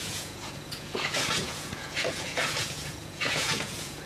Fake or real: fake